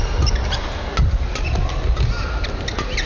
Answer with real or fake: real